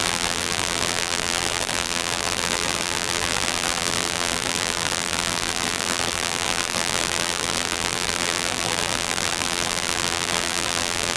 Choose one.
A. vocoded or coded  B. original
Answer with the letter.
A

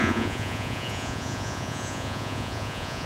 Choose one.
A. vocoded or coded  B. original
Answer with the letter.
A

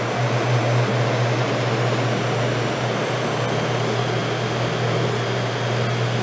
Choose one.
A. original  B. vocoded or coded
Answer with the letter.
A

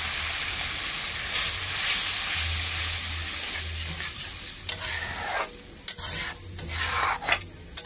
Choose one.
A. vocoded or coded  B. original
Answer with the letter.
B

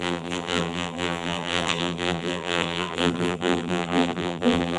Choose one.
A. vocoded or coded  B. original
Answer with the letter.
A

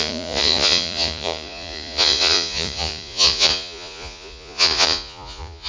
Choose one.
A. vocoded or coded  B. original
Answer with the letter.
A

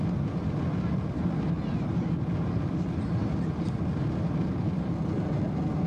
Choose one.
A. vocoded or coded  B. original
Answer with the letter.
B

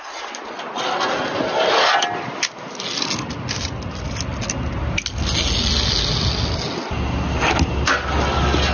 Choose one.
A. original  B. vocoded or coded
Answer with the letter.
A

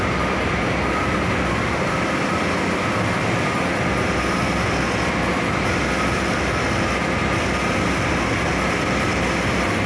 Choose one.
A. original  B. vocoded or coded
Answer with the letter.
A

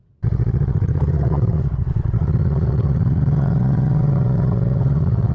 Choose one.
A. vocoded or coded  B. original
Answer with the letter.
A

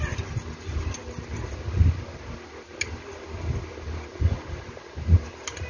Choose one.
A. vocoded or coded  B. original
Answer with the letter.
B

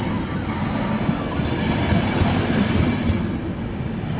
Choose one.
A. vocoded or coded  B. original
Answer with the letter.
B